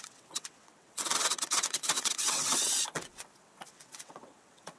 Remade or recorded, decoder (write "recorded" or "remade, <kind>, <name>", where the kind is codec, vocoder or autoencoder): remade, vocoder, WaveNeXt